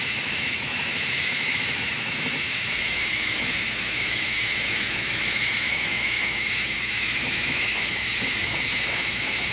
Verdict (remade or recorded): remade